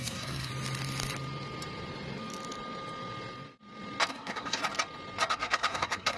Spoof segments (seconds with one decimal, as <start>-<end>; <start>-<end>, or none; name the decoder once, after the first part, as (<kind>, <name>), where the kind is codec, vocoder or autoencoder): 0.0-0.5 (codec, SNAC); 4.1-4.6; 5.3-6.2